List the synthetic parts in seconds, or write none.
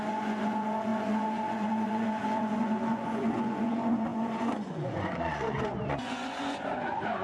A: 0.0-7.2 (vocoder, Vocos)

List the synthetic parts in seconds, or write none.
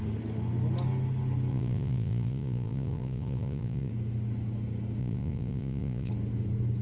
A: 1.5-3.9 (vocoder, Vocos); 5.0-6.1